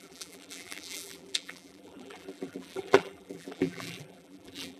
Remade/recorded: remade